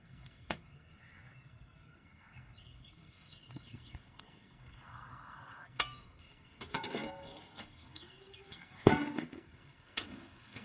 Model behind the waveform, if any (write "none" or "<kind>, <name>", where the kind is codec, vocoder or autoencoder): codec, SNAC